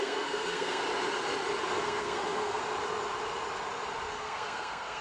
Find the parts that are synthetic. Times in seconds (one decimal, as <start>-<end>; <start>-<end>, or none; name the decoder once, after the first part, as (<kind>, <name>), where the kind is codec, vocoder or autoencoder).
0.0-0.8 (codec, SNAC); 1.8-2.6; 4.1-5.0